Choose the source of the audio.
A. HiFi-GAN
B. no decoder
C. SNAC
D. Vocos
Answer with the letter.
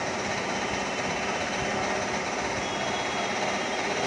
B